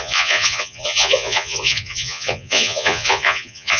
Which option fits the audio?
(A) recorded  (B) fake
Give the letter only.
B